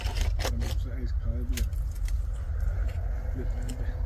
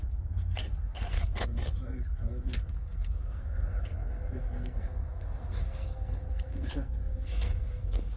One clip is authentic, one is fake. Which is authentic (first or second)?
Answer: first